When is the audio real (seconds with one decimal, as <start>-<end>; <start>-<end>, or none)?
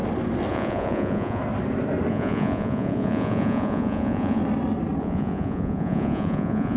0.0-0.5; 1.4-2.1; 4.4-5.0